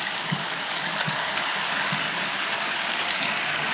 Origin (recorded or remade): remade